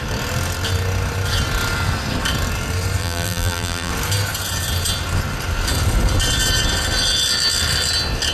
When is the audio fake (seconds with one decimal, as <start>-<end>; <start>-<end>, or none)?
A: 3.0-3.9